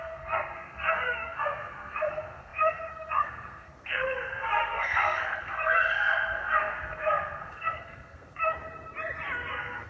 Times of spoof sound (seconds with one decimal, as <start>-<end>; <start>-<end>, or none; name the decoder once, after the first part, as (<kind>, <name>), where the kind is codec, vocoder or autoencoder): 0.0-8.4 (codec, SNAC); 9.5-9.9